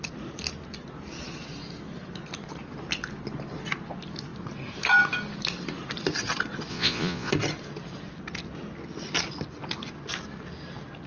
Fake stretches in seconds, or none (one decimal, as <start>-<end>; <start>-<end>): 6.7-7.3